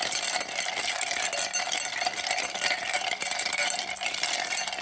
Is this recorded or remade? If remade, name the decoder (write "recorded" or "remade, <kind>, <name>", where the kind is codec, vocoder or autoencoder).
recorded